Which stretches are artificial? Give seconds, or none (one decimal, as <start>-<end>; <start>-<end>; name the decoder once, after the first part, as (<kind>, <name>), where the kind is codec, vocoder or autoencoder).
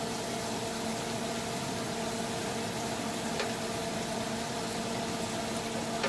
0.9-1.7 (vocoder, BigVGAN v2); 2.4-3.1; 3.8-5.4